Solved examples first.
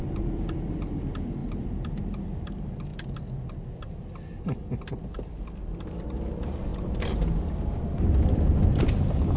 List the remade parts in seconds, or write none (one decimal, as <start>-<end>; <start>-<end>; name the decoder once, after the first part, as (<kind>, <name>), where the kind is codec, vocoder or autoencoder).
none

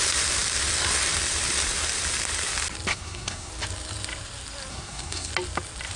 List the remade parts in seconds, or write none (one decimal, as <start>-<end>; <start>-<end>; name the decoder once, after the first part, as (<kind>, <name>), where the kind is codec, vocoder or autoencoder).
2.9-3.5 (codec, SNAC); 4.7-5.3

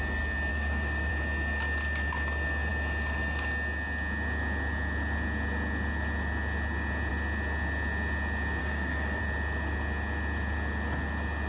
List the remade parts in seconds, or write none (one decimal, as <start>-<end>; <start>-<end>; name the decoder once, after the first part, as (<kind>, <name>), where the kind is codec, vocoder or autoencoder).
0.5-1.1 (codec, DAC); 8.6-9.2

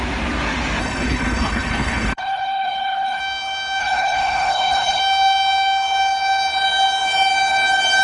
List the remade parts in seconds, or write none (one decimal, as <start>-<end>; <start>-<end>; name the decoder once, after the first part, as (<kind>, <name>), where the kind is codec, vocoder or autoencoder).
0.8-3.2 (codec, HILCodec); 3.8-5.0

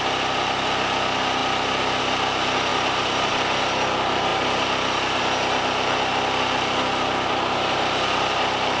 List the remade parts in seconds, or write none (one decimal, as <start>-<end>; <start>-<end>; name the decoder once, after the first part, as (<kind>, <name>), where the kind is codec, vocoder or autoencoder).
2.7-3.3 (vocoder, BigVGAN v2)

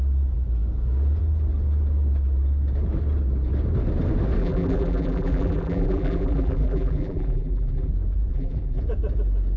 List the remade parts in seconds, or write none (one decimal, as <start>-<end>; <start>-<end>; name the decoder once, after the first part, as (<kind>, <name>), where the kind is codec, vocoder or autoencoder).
4.4-7.9 (vocoder, BigVGAN v2); 8.3-8.8